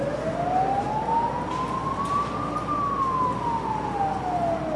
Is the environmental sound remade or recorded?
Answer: recorded